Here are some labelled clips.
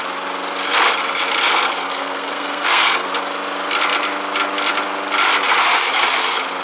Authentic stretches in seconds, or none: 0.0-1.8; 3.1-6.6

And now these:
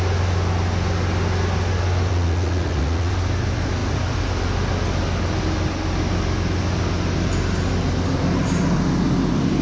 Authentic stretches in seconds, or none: 0.0-2.1; 3.1-9.6

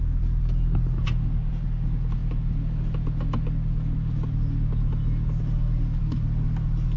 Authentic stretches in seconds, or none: 0.0-7.0